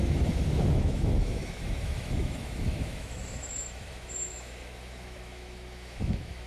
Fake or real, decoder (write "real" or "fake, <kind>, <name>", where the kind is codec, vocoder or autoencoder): fake, autoencoder, DAC-VAE